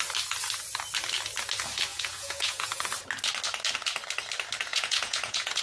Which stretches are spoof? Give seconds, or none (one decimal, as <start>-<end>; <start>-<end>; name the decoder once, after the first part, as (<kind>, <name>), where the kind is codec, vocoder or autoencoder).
1.9-2.9 (vocoder, Vocos); 4.7-5.6